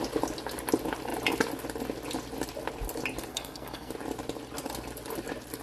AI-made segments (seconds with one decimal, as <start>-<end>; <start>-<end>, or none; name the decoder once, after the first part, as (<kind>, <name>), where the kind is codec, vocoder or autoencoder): 3.3-3.9 (codec, SNAC)